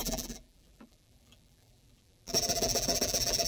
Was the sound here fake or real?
fake